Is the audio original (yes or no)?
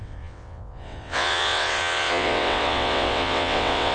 no